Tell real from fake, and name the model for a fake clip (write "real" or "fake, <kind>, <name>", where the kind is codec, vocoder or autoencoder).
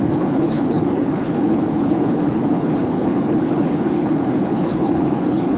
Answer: fake, codec, HILCodec